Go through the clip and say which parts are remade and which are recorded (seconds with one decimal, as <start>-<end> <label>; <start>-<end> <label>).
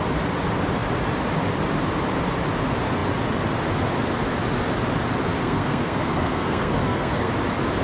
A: 0.0-5.4 recorded; 5.4-7.3 remade; 7.3-7.8 recorded